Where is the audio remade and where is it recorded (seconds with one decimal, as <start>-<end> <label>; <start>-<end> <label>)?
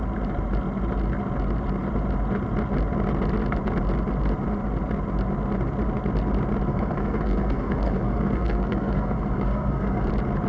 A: 0.0-6.7 recorded; 6.7-10.1 remade; 10.1-10.5 recorded